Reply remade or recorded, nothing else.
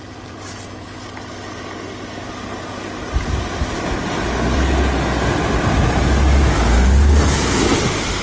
recorded